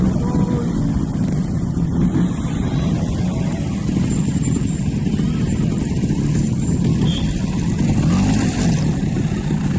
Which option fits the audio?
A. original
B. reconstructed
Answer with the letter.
A